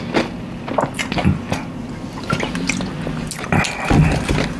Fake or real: real